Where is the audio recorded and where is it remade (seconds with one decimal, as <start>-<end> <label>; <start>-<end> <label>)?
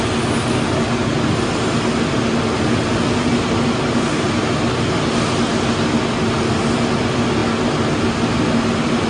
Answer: 0.0-9.1 recorded